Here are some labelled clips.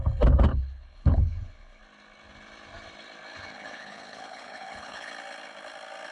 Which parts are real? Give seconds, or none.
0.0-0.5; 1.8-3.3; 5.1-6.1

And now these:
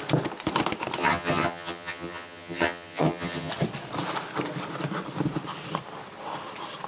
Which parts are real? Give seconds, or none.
0.0-1.0; 3.5-6.9

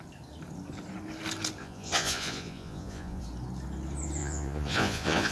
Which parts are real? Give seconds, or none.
0.0-1.6; 3.2-4.2

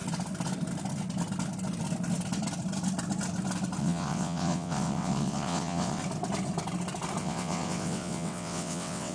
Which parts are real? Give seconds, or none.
0.0-3.8; 6.0-7.2

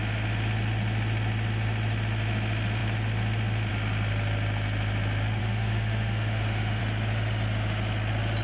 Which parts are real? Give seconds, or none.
0.0-5.4; 6.8-8.4